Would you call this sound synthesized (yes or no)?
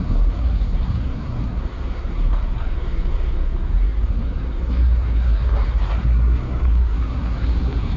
yes